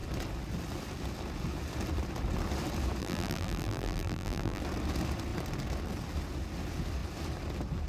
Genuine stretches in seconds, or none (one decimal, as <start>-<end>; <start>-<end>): 0.0-3.0; 4.6-7.9